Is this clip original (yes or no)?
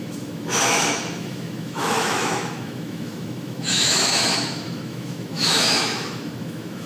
no